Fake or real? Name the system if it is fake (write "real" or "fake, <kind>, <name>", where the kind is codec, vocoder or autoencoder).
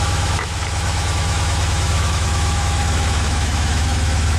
fake, autoencoder, DAC-VAE